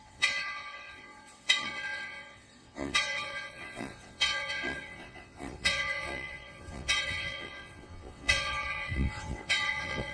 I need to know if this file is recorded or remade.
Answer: remade